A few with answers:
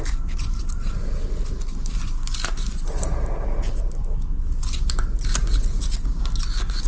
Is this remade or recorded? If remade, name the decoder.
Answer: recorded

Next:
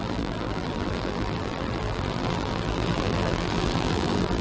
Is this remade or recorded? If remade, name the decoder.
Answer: remade, vocoder, BigVGAN v2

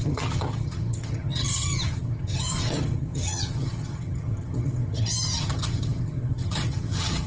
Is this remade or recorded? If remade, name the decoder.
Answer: remade, vocoder, HiFi-GAN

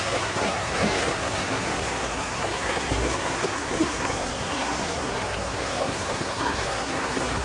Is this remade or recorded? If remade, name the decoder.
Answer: remade, codec, SNAC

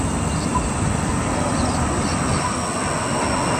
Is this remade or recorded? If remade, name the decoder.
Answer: recorded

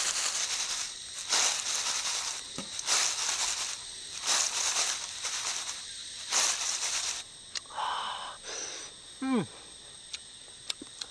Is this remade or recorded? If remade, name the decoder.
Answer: recorded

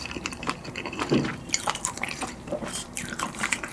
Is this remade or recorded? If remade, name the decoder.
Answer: remade, vocoder, BigVGAN v2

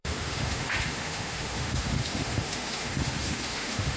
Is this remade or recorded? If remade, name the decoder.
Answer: remade, autoencoder, DAC-VAE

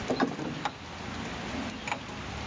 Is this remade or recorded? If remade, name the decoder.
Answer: recorded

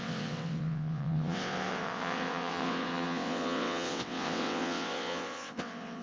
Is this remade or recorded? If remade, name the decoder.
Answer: remade, vocoder, WaveNeXt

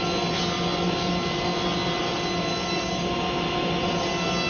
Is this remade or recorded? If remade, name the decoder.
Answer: recorded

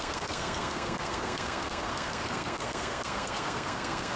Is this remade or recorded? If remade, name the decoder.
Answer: remade, codec, SNAC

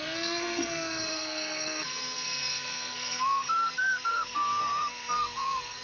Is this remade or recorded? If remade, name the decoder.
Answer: remade, codec, SNAC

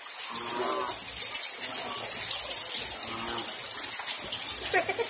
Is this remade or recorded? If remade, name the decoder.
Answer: recorded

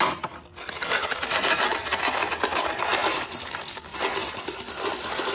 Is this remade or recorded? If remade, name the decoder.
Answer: recorded